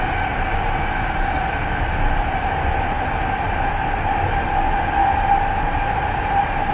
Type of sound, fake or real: real